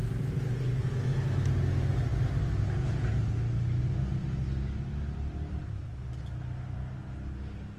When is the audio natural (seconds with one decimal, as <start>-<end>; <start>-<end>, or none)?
0.0-7.8